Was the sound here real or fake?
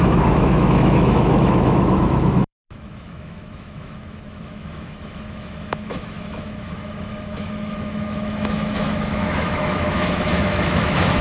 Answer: fake